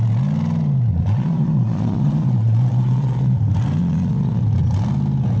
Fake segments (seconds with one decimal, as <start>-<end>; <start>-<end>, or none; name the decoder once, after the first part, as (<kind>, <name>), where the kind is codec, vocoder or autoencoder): 0.9-3.4 (vocoder, Vocos); 3.8-4.4